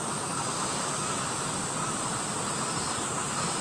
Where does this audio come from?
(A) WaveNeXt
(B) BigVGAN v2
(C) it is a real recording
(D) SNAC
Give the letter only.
C